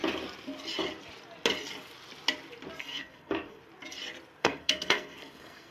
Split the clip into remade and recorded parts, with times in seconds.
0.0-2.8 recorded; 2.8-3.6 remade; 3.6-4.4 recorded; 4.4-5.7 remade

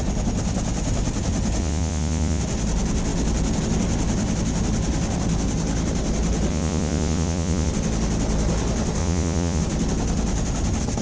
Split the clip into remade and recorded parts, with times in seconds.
0.0-1.6 recorded; 1.6-2.4 remade; 2.4-6.5 recorded; 6.5-7.7 remade; 7.7-9.0 recorded; 9.0-9.6 remade; 9.6-11.0 recorded

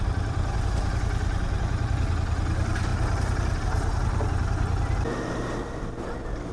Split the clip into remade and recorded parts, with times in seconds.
0.0-6.5 recorded

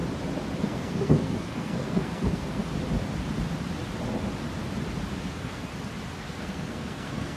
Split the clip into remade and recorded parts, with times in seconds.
0.0-0.6 recorded; 0.6-2.7 remade; 2.7-5.2 recorded; 5.2-5.7 remade; 5.7-6.2 recorded; 6.2-7.4 remade